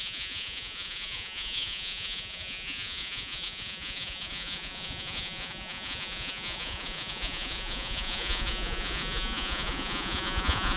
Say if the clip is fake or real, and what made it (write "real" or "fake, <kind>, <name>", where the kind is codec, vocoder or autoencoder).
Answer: fake, vocoder, Vocos